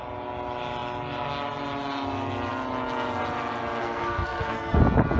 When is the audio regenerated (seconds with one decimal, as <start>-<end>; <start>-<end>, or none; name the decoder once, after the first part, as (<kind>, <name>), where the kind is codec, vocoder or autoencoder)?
3.8-4.8 (codec, SNAC)